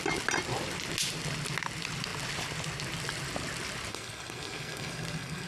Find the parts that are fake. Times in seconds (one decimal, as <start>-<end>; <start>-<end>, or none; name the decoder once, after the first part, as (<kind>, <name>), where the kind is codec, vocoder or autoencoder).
3.9-5.5 (codec, SNAC)